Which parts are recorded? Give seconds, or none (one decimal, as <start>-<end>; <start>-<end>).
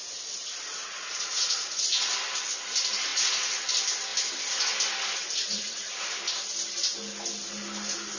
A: 0.0-0.8; 2.1-3.1; 3.6-5.2; 5.9-8.2